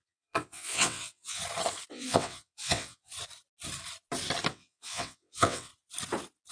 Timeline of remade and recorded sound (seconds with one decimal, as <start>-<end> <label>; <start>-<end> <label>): 0.0-1.4 remade; 1.4-1.9 recorded; 1.9-3.1 remade; 3.1-4.5 recorded; 4.5-5.7 remade; 5.7-6.5 recorded